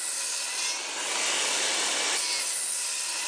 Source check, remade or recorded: recorded